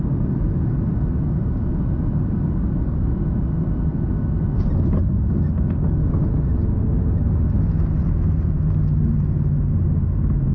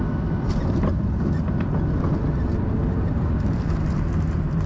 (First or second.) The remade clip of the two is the second